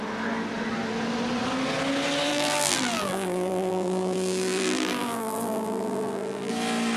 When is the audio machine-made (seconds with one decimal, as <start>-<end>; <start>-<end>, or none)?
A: 2.3-6.5